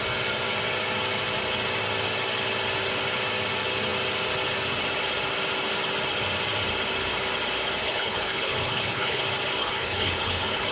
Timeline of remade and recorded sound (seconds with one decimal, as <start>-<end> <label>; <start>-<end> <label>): 0.0-7.8 recorded; 7.8-9.2 remade; 9.2-9.6 recorded; 9.6-10.7 remade